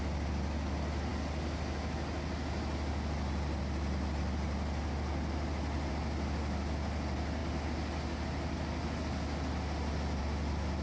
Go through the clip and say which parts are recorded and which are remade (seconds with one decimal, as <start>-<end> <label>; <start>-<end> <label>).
0.0-10.8 recorded